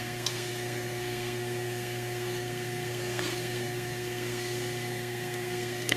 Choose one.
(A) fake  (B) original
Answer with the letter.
A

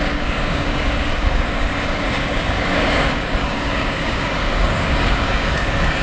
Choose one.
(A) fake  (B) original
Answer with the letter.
A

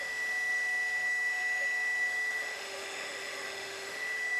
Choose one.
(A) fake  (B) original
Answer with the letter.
A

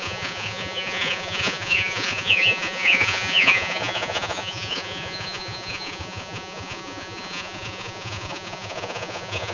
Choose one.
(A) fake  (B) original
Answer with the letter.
A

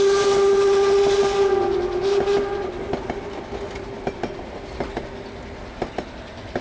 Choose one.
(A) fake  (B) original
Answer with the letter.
B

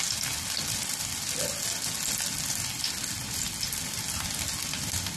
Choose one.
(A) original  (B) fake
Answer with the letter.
A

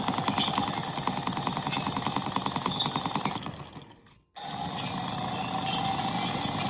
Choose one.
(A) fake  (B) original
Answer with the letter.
B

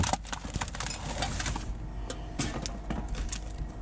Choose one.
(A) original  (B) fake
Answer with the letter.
A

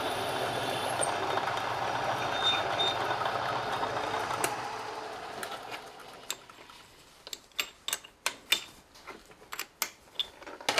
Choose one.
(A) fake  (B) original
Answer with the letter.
B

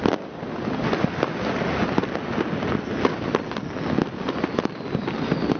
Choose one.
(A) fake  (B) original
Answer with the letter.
B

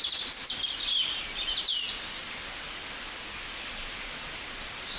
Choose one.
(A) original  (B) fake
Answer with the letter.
A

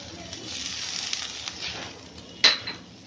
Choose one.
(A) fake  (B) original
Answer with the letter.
B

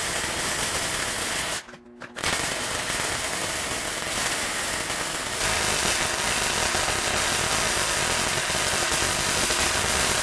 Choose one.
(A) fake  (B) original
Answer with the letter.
B